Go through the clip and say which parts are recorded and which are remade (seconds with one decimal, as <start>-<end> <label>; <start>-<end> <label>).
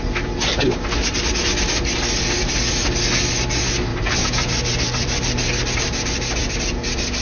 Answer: 0.0-3.9 recorded; 3.9-6.5 remade; 6.5-7.2 recorded